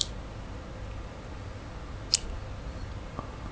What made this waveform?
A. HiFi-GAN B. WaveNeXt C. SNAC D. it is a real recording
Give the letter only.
D